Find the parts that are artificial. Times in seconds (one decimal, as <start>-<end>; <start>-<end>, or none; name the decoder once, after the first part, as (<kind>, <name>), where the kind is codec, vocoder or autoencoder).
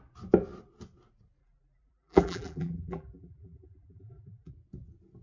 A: 1.4-4.5 (vocoder, BigVGAN v2)